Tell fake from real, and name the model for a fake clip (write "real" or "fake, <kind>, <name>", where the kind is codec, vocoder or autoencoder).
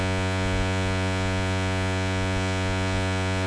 fake, vocoder, Vocos